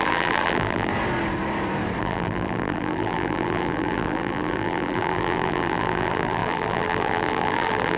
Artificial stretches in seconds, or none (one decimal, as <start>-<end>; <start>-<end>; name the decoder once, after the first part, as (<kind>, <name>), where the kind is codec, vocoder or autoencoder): 0.0-0.9 (vocoder, BigVGAN v2); 2.0-8.0